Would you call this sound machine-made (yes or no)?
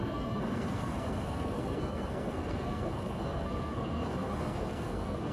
yes